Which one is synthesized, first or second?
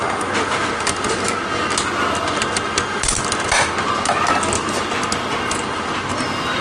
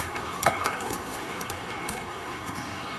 second